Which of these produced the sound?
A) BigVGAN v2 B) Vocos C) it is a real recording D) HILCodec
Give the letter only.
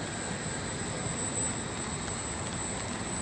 C